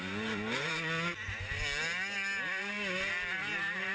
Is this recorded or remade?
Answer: recorded